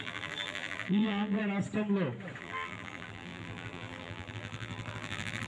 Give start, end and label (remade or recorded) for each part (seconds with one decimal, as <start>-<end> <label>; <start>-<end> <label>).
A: 0.0-1.4 remade; 1.4-2.4 recorded; 2.4-5.5 remade

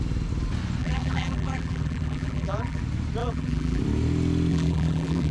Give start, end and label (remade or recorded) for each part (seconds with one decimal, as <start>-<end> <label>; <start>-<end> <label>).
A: 0.0-0.8 recorded; 0.8-2.8 remade; 2.8-3.2 recorded; 3.2-3.8 remade; 3.8-4.5 recorded; 4.5-5.3 remade